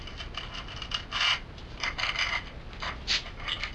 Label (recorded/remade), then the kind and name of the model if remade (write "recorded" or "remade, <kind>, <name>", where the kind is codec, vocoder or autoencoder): recorded